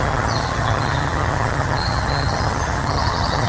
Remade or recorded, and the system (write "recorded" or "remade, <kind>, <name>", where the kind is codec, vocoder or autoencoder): remade, vocoder, HiFi-GAN